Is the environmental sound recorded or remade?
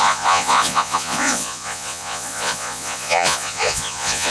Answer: remade